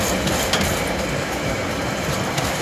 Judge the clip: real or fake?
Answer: real